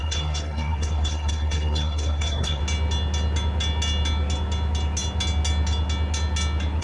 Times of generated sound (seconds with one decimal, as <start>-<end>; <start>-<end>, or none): 0.0-2.6